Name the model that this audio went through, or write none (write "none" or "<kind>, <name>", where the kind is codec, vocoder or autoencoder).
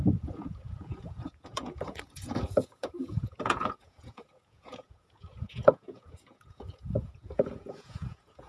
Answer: vocoder, Vocos